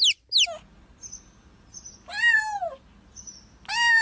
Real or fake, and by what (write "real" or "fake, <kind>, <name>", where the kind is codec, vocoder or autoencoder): real